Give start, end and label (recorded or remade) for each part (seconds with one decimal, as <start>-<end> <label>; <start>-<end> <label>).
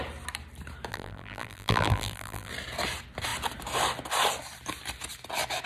0.0-0.9 recorded; 0.9-2.5 remade; 2.5-5.7 recorded